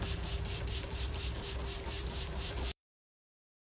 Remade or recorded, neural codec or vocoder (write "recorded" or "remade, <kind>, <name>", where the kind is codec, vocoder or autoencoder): remade, vocoder, BigVGAN v2